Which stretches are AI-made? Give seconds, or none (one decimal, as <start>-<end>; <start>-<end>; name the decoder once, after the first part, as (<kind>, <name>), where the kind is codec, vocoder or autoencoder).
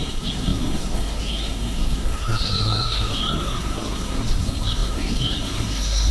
0.0-6.1 (codec, SNAC)